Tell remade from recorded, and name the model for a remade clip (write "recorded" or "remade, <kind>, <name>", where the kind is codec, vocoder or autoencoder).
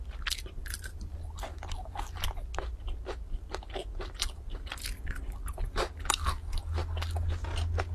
recorded